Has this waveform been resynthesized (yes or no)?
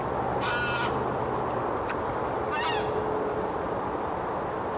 no